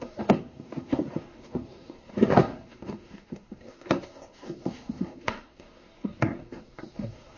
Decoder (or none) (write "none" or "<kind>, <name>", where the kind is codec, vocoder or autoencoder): codec, SNAC